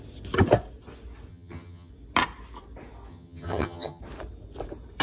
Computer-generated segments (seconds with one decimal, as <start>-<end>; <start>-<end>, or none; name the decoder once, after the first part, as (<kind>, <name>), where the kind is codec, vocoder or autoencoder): 1.3-1.9 (vocoder, HiFi-GAN); 3.1-4.0